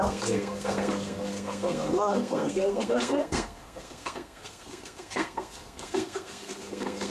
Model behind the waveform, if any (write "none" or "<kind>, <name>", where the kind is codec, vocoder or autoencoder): codec, SNAC